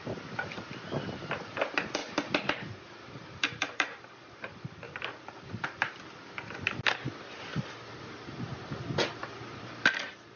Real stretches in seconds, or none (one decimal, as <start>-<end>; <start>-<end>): 0.0-2.0; 5.5-7.5; 8.6-9.2